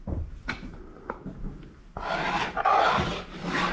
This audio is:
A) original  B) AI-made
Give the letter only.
A